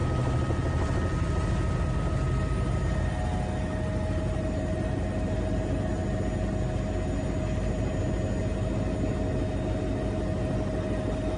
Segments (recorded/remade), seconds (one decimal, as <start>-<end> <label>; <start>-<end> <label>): 0.0-11.4 recorded